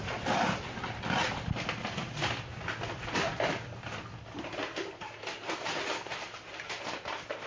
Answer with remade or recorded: recorded